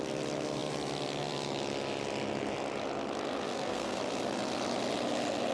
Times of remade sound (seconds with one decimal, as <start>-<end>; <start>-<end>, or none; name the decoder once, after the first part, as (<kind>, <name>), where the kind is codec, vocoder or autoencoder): 3.5-4.0 (codec, SNAC)